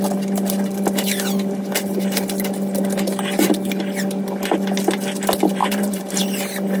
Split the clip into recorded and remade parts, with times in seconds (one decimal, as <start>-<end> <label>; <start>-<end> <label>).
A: 0.0-5.6 recorded; 5.6-6.2 remade; 6.2-6.8 recorded